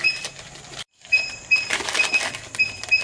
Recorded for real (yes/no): no